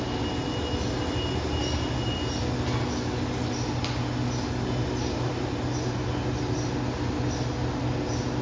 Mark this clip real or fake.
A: real